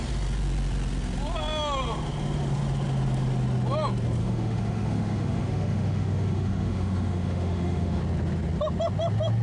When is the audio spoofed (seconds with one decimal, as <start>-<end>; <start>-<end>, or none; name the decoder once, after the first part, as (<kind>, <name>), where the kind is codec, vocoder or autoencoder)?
4.2-8.0 (autoencoder, DAC-VAE)